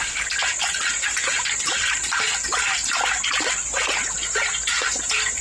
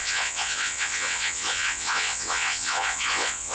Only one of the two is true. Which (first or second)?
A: first